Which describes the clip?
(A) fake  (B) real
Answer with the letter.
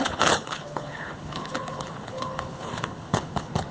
A